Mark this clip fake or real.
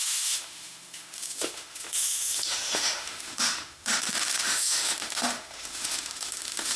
fake